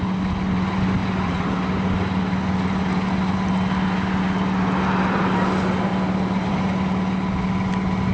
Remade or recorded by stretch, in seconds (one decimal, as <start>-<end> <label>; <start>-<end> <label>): 0.0-1.0 recorded; 1.0-1.6 remade; 1.6-8.1 recorded